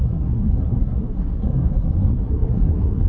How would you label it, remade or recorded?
remade